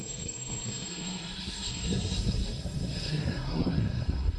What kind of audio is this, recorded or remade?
remade